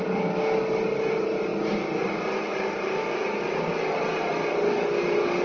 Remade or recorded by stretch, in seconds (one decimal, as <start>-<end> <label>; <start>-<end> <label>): 0.0-5.4 recorded